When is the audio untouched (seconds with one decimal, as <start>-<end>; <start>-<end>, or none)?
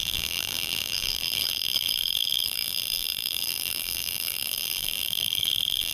none